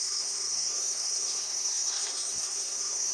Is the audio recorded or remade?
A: remade